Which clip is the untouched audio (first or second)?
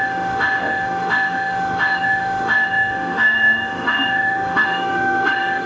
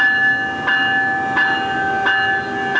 second